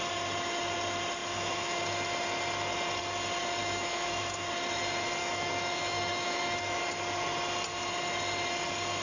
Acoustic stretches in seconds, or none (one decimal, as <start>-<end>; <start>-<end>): 0.0-1.2; 1.8-3.6; 4.5-5.2; 6.8-9.0